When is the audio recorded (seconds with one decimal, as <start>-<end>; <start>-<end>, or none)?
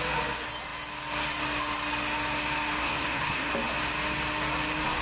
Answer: 0.0-2.8; 3.5-5.0